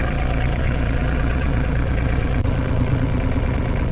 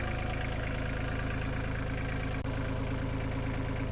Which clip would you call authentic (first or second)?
second